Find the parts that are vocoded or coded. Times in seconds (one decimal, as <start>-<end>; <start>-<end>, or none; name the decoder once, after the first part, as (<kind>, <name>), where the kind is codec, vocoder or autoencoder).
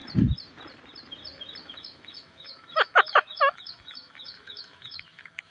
1.6-5.5 (autoencoder, DAC-VAE)